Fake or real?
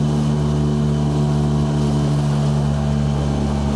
real